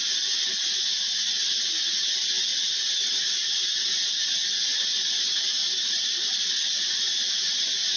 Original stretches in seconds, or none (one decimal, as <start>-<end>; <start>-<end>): 0.0-2.5; 4.2-5.6; 7.6-8.0